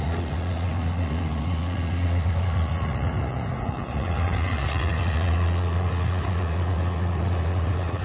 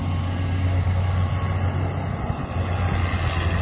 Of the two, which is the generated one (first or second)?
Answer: first